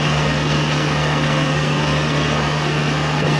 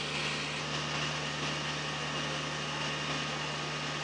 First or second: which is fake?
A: first